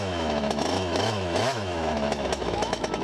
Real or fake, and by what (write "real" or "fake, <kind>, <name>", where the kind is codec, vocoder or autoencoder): fake, autoencoder, DAC-VAE